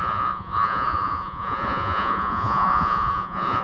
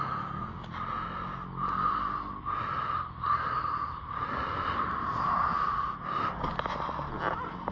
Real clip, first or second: second